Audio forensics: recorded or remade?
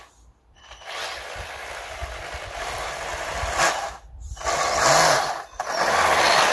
recorded